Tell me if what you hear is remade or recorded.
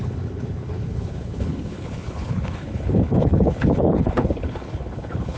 remade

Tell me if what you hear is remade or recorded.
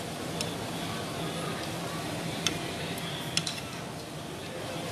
recorded